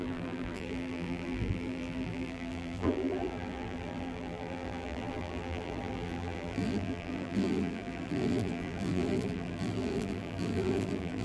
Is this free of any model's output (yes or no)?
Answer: no